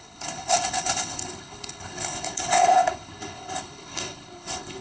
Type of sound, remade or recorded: remade